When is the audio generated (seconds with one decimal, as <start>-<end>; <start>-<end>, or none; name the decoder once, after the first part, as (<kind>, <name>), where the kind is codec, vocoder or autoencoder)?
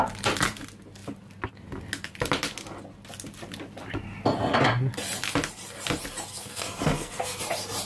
6.3-7.4 (codec, SNAC)